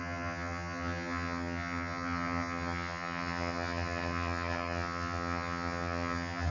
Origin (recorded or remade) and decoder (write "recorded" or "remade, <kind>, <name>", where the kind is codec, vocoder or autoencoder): remade, vocoder, HiFi-GAN